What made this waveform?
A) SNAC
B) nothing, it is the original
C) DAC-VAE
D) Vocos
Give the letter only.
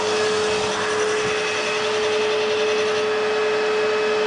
B